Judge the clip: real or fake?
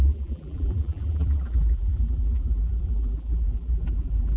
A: fake